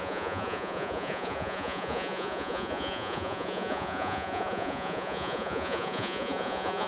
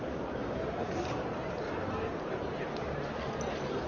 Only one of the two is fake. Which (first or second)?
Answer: first